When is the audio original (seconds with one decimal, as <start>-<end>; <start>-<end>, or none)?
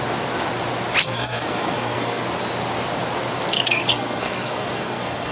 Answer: 0.0-1.0; 2.2-3.5